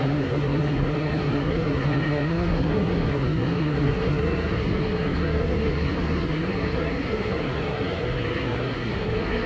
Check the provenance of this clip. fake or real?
fake